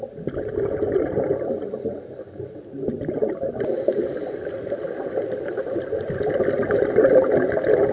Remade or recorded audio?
recorded